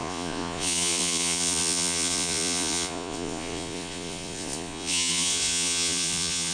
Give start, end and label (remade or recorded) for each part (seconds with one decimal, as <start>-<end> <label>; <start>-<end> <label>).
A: 0.0-6.5 remade